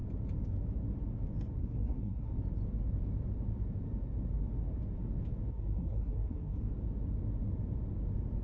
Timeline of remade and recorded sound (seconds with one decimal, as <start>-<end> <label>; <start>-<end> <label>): 0.0-1.6 recorded; 1.6-2.3 remade; 2.3-5.5 recorded; 5.5-6.7 remade; 6.7-8.4 recorded